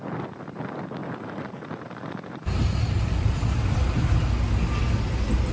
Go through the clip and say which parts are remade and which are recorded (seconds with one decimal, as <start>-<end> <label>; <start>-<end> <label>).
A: 0.0-1.0 recorded; 1.0-4.3 remade; 4.3-5.5 recorded